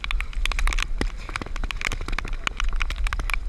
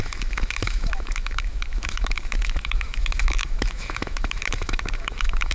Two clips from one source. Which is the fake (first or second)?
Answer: second